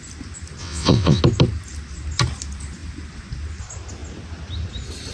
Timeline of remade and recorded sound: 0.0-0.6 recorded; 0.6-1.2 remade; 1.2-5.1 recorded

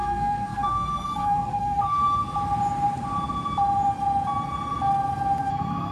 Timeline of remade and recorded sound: 0.0-2.0 remade; 2.0-5.5 recorded; 5.5-5.9 remade

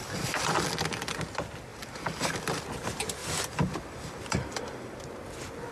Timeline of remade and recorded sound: 0.0-0.7 remade; 0.7-1.7 recorded; 1.7-2.6 remade; 2.6-3.2 recorded; 3.2-5.0 remade; 5.0-5.7 recorded